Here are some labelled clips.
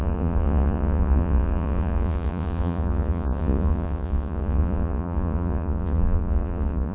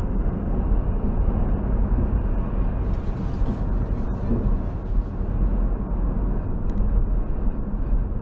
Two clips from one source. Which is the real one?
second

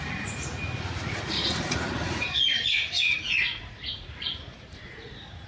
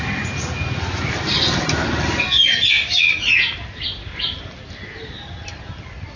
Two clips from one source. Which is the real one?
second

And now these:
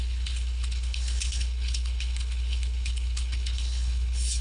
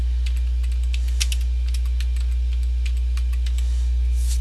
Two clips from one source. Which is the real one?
second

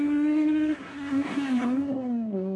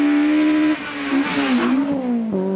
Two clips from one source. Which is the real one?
second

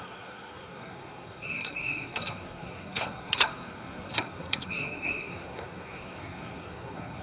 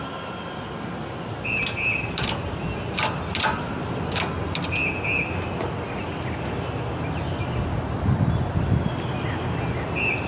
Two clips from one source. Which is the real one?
second